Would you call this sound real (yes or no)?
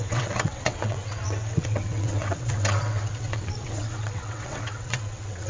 no